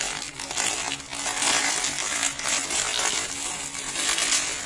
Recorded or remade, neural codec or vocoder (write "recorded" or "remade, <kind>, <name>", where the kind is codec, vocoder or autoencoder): recorded